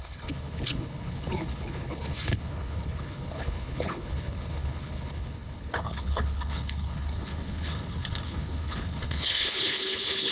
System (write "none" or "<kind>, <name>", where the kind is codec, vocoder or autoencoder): codec, HILCodec